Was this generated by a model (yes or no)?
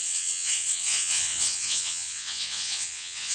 yes